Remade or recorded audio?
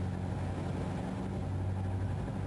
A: recorded